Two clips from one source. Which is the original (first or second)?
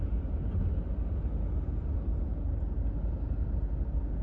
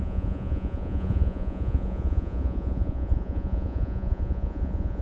first